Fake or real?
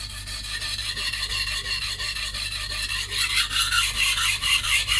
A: real